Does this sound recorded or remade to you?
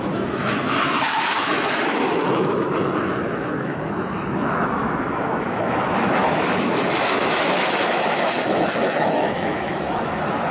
remade